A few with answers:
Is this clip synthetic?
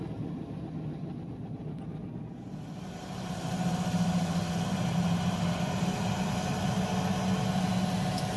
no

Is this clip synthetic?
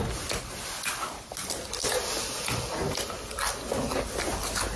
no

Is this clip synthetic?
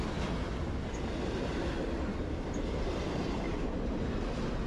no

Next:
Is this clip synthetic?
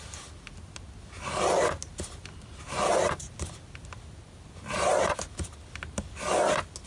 no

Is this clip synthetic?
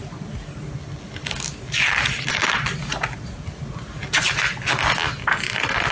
no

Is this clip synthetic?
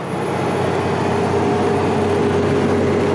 no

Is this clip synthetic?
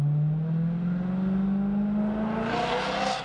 no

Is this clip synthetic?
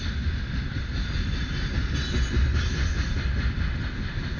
no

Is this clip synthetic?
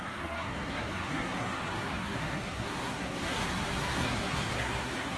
yes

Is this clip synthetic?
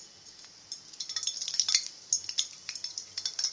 no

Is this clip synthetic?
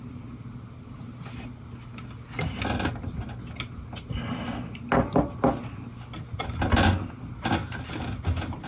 no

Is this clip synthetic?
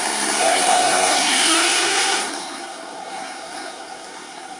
yes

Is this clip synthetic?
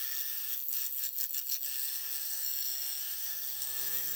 yes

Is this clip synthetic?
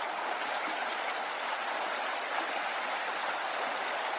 no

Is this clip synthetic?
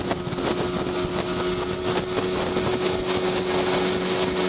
no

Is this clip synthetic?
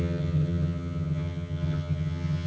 yes